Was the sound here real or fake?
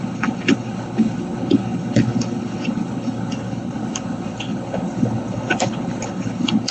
fake